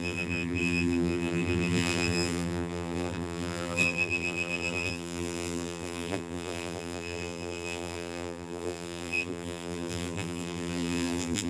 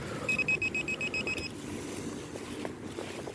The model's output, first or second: first